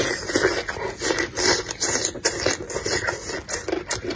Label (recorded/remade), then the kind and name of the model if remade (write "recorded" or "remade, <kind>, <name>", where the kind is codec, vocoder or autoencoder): recorded